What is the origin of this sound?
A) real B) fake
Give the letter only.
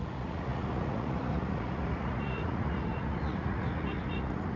B